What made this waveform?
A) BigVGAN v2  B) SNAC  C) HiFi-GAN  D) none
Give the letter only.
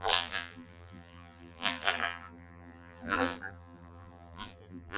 A